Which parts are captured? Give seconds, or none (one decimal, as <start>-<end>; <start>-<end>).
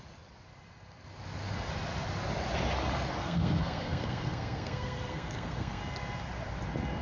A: 0.0-3.2; 5.8-7.0